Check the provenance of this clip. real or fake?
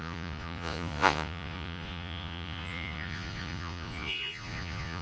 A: fake